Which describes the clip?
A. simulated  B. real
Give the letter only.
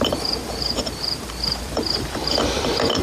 A